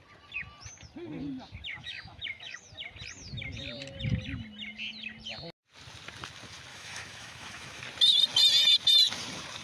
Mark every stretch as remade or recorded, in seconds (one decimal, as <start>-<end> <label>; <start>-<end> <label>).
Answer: 0.0-1.7 recorded; 1.7-2.6 remade; 2.6-6.7 recorded; 6.7-7.8 remade; 7.8-9.6 recorded